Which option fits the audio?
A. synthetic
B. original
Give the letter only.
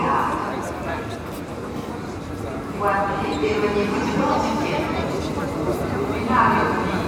B